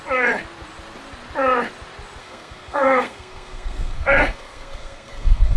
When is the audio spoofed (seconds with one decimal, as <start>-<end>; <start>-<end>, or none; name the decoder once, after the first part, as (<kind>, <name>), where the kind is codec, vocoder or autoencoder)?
2.2-5.6 (codec, SNAC)